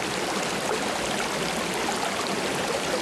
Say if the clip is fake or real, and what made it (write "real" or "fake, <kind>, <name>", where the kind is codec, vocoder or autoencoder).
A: real